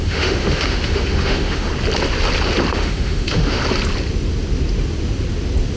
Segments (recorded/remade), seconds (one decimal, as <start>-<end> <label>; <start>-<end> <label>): 0.0-1.7 remade; 1.7-2.7 recorded; 2.7-3.6 remade; 3.6-5.8 recorded